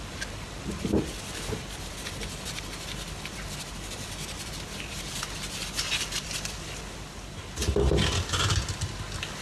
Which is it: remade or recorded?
recorded